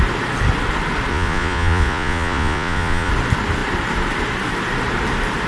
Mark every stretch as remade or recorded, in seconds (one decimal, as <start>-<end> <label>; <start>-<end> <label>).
0.0-1.1 recorded; 1.1-3.1 remade; 3.1-5.5 recorded